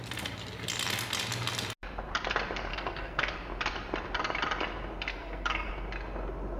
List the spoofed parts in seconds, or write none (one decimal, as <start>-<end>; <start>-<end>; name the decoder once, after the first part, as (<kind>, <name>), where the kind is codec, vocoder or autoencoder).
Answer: 2.7-3.3 (codec, SNAC); 5.1-5.7